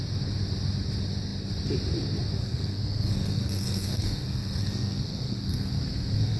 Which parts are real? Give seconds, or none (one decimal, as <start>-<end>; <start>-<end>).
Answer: 0.0-2.4